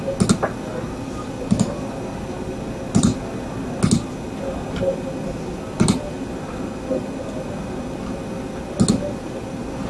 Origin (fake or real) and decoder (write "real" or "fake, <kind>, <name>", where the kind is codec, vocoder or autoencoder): real